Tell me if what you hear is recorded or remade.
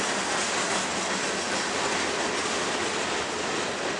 recorded